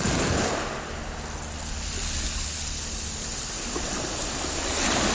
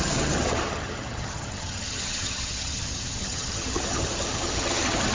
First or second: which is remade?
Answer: second